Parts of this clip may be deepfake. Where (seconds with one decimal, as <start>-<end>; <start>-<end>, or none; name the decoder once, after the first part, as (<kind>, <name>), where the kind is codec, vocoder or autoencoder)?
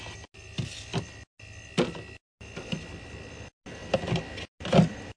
none